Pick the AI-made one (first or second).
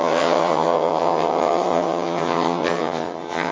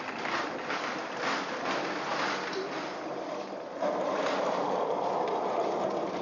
first